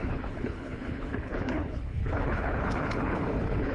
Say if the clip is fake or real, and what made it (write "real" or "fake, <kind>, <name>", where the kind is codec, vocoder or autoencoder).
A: fake, codec, HILCodec